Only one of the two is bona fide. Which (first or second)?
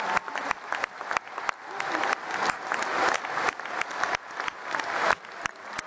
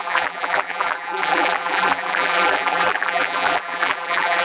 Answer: first